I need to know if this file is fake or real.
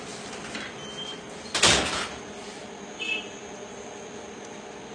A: real